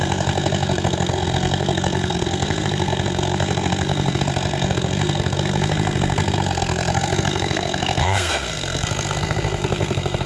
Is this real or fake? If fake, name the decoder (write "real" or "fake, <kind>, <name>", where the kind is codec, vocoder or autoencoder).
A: fake, codec, SNAC